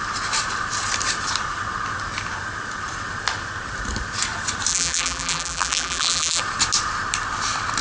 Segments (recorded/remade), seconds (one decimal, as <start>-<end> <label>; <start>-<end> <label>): 0.0-4.7 recorded; 4.7-6.4 remade; 6.4-7.8 recorded